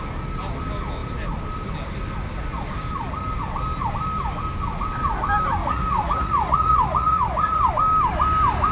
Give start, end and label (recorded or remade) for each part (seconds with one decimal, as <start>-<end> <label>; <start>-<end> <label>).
0.0-5.6 recorded; 5.6-7.7 remade; 7.7-8.7 recorded